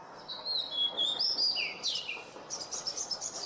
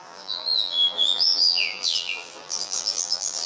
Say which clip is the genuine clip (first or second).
first